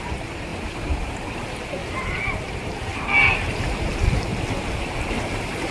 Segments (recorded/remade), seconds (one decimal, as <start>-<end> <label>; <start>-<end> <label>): 0.0-1.8 remade; 1.8-2.4 recorded; 2.4-2.9 remade; 2.9-3.4 recorded; 3.4-4.3 remade; 4.3-4.8 recorded; 4.8-5.7 remade